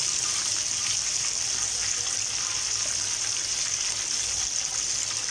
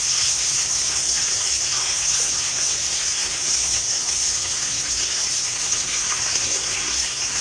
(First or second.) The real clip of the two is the first